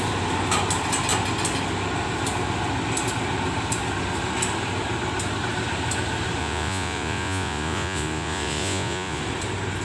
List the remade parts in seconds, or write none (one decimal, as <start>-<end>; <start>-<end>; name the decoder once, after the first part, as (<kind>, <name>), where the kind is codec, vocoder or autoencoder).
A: 6.4-9.2 (vocoder, Vocos)